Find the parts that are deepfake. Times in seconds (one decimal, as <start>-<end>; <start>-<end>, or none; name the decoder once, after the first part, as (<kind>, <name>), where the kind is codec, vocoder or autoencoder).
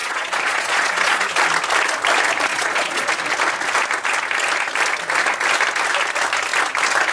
0.0-1.3 (vocoder, Vocos); 2.5-3.1